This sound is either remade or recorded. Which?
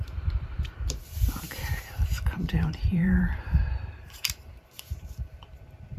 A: remade